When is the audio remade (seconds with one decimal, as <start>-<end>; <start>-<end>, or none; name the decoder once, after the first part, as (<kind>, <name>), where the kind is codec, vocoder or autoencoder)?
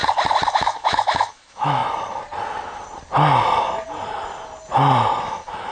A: 0.5-1.8 (autoencoder, DAC-VAE); 5.2-5.7